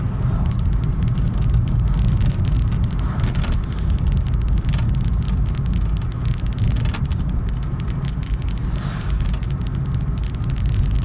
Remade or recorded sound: recorded